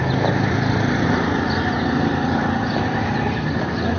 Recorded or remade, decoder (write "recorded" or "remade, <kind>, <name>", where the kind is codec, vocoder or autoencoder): recorded